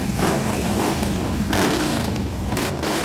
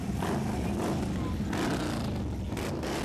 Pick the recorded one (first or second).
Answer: second